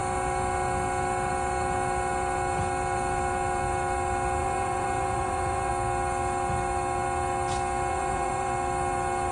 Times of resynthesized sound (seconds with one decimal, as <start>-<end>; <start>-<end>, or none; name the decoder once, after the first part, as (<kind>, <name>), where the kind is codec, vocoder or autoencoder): 4.4-5.7 (vocoder, Vocos); 7.9-8.5